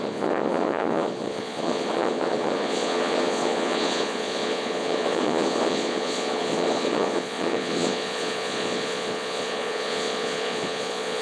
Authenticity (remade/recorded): remade